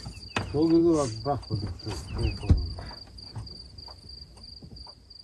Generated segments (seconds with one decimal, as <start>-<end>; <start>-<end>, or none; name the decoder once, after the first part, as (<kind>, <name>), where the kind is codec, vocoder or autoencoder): none